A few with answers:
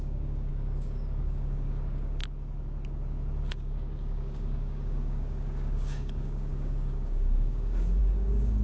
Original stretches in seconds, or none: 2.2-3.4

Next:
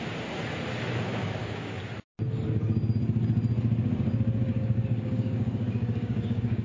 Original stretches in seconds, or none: 0.0-1.1; 1.8-4.5

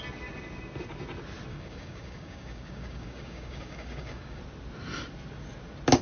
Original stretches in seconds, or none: 0.0-1.5; 4.4-6.0

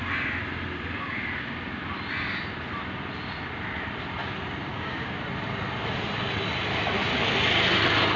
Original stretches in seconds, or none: 0.0-4.7; 5.2-8.2

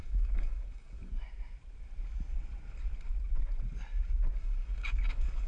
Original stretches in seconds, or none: 1.1-4.4

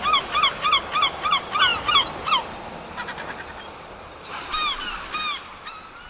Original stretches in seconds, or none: 0.0-6.1

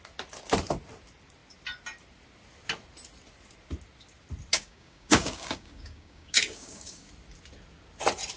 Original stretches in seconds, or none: 0.0-4.5; 7.1-8.4

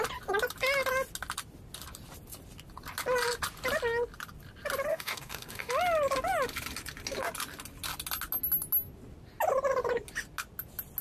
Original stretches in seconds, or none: 0.0-4.9; 5.7-11.0